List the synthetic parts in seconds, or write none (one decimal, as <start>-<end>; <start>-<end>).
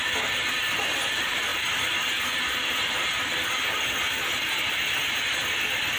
none